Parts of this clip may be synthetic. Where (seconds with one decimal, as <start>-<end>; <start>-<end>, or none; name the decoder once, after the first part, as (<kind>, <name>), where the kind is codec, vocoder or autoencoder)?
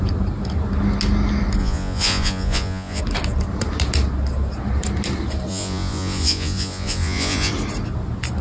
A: 1.6-3.0 (vocoder, Vocos); 5.5-7.5